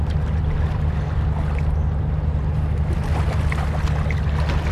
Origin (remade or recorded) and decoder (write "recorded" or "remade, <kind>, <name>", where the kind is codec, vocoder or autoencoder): recorded